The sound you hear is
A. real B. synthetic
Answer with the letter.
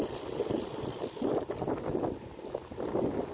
A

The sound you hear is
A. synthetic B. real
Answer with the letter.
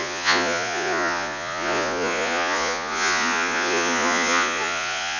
A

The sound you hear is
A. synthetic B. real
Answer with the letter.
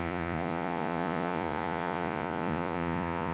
A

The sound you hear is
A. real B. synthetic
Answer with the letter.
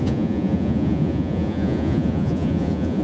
B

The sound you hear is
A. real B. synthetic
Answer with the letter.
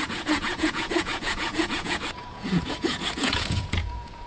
B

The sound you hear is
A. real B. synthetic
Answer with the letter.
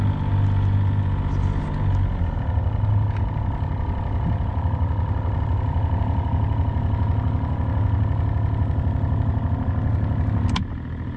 A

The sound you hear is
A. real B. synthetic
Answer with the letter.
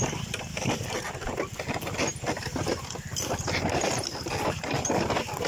A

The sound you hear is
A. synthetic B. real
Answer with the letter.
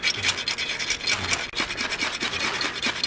B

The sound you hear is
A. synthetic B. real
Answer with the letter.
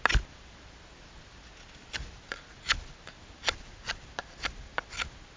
B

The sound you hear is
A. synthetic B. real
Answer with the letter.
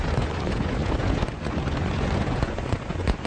A